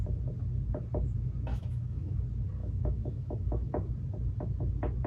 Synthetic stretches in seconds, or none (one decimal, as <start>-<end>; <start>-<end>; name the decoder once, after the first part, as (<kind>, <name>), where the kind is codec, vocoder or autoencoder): 1.5-2.2 (autoencoder, DAC-VAE); 2.6-3.9